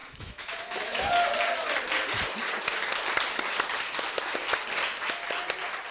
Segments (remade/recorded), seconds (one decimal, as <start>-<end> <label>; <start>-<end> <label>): 0.0-1.1 remade; 1.1-5.9 recorded